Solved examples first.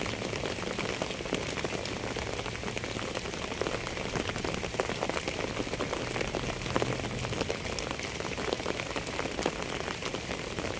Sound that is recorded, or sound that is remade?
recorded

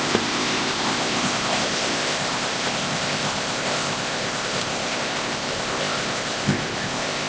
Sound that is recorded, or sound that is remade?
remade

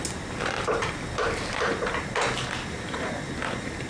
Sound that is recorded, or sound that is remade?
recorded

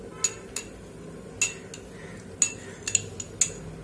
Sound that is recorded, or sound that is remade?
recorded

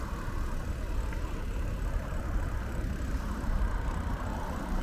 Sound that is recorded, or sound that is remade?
recorded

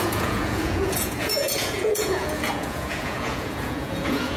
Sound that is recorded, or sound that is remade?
remade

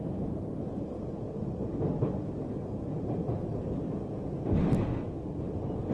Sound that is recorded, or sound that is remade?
recorded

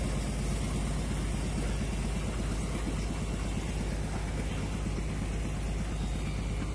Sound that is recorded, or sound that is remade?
recorded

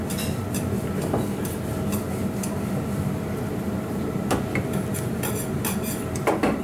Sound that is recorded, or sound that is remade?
recorded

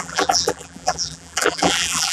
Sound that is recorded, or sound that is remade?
remade